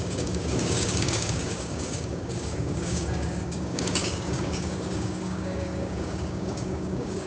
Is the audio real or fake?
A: fake